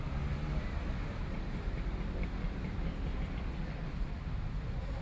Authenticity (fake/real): real